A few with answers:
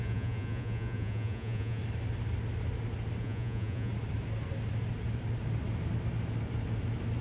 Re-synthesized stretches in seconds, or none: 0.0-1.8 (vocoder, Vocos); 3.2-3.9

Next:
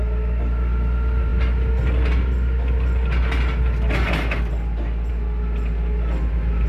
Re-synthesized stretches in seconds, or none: none

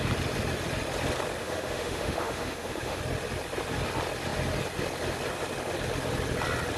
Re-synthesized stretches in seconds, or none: 1.4-3.0 (autoencoder, DAC-VAE)

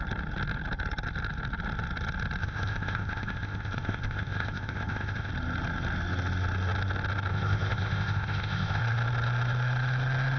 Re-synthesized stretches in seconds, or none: 2.4-5.3 (codec, ZipCodec); 7.3-8.8

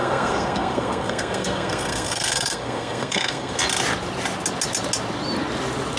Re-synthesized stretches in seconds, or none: 0.0-3.6 (codec, SNAC)

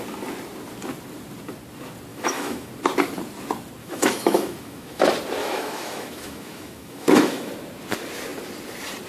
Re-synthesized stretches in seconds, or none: 2.1-2.7 (autoencoder, DAC-VAE); 3.8-5.0; 5.4-7.5

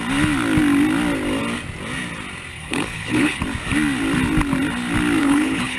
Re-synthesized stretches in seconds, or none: 2.5-3.4 (codec, HILCodec); 5.2-5.8

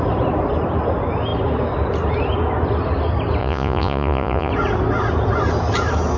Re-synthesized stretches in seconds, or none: 3.4-4.5 (vocoder, Vocos)